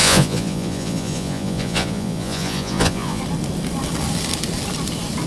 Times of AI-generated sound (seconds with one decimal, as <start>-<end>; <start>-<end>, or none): 0.0-3.2